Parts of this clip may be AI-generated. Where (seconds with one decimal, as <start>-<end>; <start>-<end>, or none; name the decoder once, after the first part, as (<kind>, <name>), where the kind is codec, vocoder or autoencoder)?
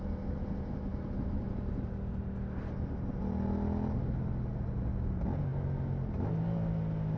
none